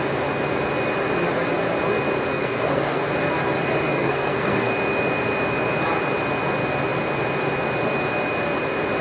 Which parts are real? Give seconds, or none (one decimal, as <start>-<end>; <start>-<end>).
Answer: 0.0-2.3; 3.1-3.9; 4.7-9.0